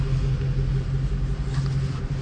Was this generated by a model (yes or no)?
no